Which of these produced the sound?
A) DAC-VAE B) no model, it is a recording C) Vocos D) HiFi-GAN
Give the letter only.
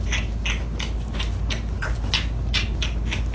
B